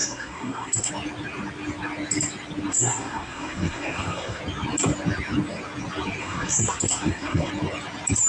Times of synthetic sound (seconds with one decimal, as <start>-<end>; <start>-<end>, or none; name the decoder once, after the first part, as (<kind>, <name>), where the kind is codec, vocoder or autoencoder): 0.0-0.9 (codec, SNAC); 2.7-4.4; 6.2-7.5